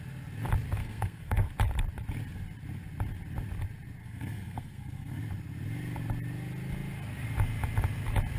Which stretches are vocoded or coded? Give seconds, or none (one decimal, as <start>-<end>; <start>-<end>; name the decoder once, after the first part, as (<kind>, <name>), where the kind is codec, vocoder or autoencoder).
0.8-1.5 (codec, SNAC); 4.0-5.2